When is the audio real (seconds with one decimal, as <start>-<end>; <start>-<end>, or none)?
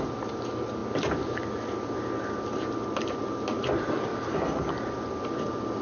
0.0-5.8